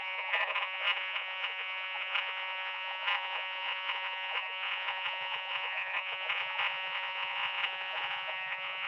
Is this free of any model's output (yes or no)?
no